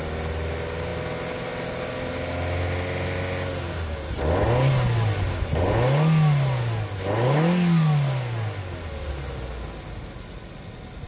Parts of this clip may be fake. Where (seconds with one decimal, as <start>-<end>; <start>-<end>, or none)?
none